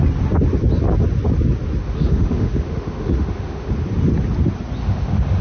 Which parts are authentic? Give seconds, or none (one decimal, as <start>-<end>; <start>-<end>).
0.0-1.8; 3.7-4.8